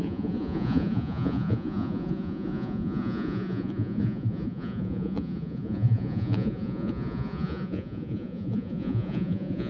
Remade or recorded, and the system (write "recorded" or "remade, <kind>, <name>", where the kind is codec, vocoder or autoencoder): remade, vocoder, Vocos